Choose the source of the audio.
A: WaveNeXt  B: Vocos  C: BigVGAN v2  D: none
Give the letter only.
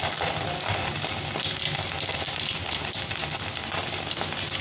D